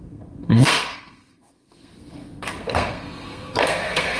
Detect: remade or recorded remade